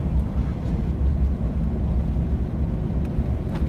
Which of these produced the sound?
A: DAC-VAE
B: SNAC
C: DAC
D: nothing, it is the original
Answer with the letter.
D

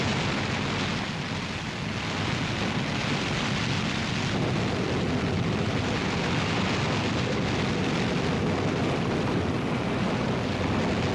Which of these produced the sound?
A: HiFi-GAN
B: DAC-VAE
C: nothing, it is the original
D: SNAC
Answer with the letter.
C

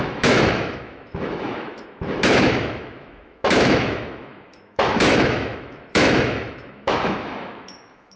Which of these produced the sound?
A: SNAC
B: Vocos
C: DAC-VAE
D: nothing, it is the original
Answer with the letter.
C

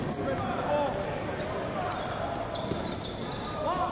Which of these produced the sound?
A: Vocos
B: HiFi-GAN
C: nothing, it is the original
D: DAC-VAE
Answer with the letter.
C